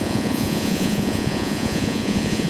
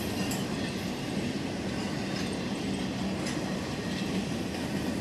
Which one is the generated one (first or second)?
first